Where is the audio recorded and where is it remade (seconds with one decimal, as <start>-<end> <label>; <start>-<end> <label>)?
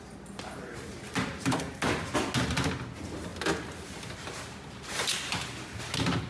0.0-6.3 recorded